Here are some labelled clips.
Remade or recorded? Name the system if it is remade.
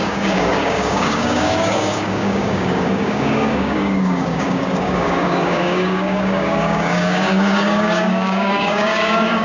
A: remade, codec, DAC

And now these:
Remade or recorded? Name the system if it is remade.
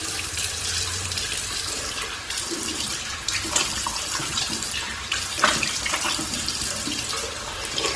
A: remade, vocoder, BigVGAN v2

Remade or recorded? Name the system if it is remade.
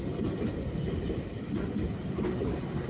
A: recorded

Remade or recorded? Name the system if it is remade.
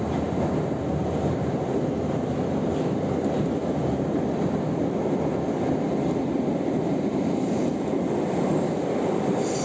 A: recorded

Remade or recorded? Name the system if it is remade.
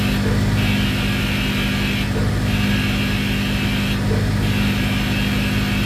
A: recorded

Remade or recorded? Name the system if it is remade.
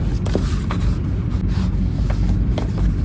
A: recorded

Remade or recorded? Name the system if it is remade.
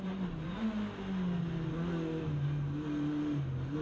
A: recorded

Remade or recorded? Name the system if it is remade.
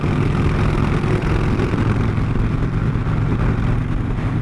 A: recorded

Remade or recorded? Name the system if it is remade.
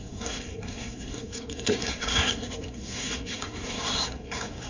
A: remade, codec, SNAC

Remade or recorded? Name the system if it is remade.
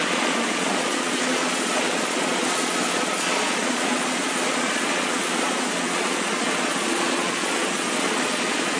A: remade, vocoder, Vocos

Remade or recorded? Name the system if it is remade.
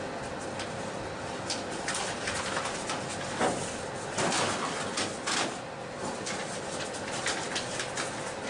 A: recorded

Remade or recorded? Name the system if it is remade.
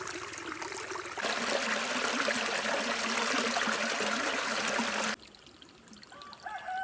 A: recorded